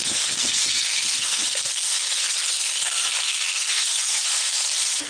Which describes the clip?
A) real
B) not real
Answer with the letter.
B